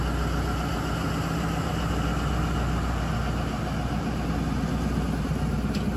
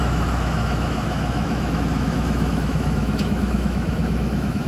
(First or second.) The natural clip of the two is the first